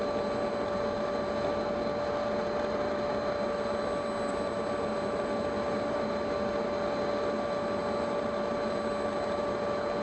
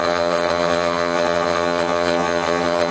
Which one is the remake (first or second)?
second